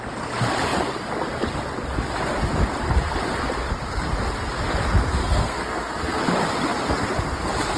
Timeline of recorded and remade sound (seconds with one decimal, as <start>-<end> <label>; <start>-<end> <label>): 0.0-5.2 recorded; 5.2-6.2 remade; 6.2-7.8 recorded